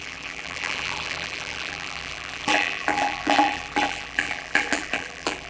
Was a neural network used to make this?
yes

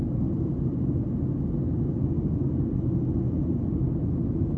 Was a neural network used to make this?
no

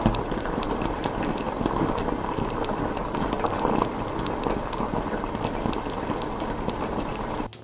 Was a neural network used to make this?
no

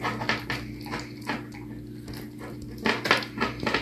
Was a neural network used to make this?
no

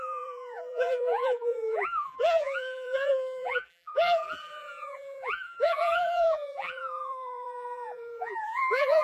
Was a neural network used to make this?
yes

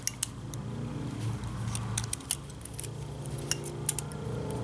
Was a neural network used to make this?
no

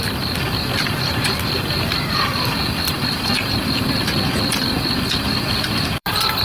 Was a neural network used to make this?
yes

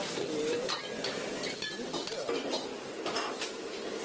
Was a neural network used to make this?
no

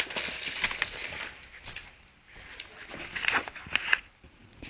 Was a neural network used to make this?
no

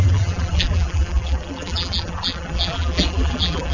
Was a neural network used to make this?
yes